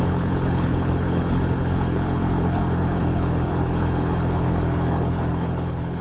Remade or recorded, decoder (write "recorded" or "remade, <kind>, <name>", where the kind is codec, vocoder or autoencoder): remade, codec, HILCodec